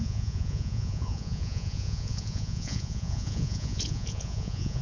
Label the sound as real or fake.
fake